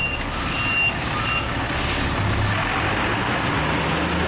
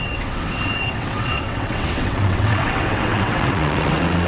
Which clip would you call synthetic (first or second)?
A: second